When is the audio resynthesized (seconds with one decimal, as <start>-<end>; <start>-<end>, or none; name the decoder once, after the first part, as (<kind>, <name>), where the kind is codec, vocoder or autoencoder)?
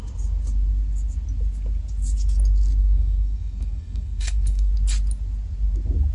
2.8-4.7 (codec, SNAC)